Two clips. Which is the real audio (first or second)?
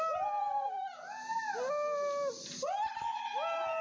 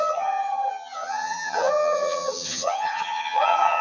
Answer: first